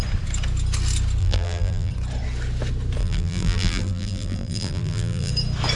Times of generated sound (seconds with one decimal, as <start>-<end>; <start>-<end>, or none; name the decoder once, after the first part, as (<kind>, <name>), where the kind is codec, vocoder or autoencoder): 1.2-1.9 (vocoder, BigVGAN v2); 3.0-5.3

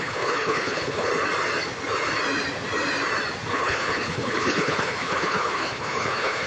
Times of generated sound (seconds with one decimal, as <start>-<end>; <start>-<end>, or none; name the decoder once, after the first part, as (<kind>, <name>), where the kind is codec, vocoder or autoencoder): 0.0-1.1 (codec, HILCodec); 3.5-6.5

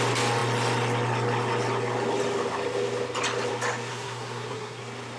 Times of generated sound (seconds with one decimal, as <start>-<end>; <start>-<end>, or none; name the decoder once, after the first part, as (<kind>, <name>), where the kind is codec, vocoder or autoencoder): 3.9-4.8 (codec, SNAC)

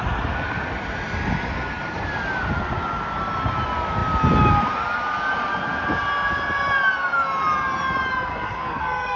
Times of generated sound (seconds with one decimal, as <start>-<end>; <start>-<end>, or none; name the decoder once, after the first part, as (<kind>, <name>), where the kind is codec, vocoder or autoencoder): 8.3-9.2 (codec, SNAC)

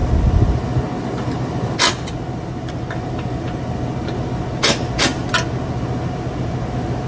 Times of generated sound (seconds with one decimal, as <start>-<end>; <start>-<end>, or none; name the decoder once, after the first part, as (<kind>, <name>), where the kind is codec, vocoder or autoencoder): none

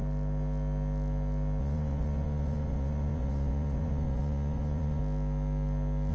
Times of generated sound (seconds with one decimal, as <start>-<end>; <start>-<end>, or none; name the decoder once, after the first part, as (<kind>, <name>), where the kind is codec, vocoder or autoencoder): 1.6-5.0 (vocoder, Vocos)